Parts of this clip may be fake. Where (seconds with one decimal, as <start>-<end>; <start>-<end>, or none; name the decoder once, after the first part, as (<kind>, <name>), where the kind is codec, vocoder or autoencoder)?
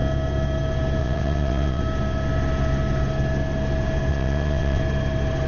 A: 1.0-1.8 (vocoder, WaveNeXt); 4.1-4.8